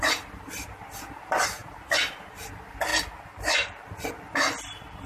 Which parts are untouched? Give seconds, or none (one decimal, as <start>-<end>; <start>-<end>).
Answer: 1.6-2.3; 2.9-4.1